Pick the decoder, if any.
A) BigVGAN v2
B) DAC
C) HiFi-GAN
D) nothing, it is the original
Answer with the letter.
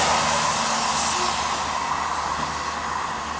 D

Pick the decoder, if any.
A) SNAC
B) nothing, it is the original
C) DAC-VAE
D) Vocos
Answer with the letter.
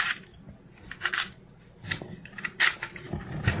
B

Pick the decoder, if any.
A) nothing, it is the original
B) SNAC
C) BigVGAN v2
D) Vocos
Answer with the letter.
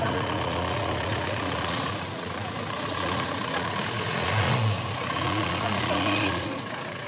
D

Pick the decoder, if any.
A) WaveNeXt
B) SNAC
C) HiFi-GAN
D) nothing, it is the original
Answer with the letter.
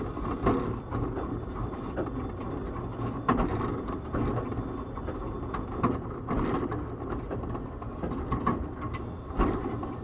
D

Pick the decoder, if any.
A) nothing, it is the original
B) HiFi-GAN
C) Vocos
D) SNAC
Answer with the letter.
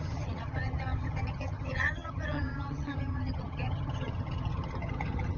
B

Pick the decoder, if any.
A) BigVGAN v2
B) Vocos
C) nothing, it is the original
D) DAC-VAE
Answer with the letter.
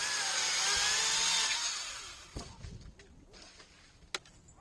C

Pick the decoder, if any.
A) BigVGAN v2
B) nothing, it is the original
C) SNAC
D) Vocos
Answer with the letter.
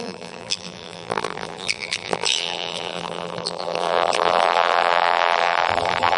A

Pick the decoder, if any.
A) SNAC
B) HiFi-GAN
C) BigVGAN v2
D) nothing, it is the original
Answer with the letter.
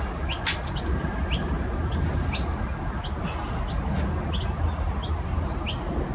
D